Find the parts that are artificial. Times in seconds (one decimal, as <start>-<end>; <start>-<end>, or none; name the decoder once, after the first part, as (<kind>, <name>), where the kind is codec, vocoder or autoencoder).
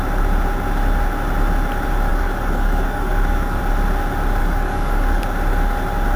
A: 2.1-3.6 (codec, DAC); 4.4-5.2